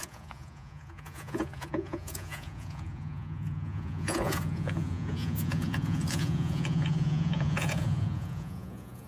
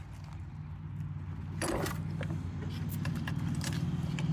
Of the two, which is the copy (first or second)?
first